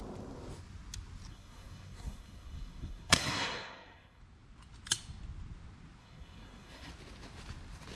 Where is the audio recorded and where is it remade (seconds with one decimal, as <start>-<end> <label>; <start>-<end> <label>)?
0.0-1.3 recorded; 1.3-4.2 remade; 4.2-6.0 recorded; 6.0-6.9 remade; 6.9-8.0 recorded